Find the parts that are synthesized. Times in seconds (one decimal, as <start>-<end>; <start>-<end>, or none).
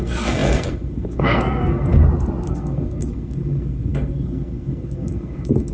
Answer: 0.0-1.9; 2.5-5.7